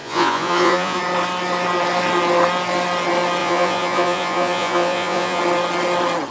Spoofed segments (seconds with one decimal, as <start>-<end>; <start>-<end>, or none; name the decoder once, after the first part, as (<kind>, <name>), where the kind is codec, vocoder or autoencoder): 0.0-1.0 (vocoder, Vocos); 3.4-5.4